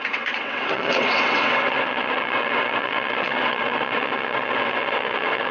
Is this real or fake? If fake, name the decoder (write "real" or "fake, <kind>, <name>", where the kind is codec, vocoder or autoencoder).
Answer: fake, vocoder, WaveNeXt